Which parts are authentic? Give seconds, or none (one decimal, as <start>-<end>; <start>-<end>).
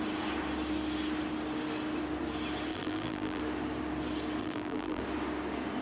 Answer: 0.0-2.7; 3.4-4.4; 5.0-5.8